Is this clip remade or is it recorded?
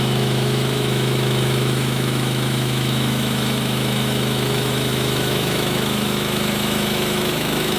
remade